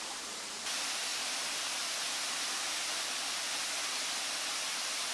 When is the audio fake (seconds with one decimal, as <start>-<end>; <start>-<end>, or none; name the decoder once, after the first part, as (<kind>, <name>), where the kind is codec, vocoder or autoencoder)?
none